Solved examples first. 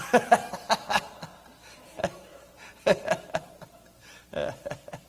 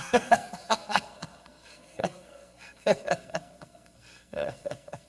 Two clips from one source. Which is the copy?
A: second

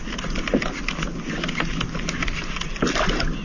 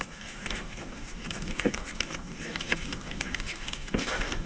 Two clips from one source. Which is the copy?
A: second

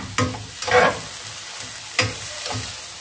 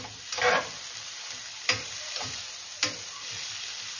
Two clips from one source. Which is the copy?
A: second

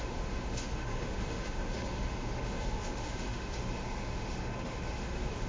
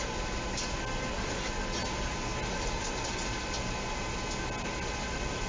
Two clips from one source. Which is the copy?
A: first